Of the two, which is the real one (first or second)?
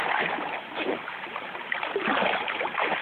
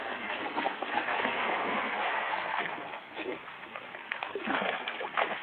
first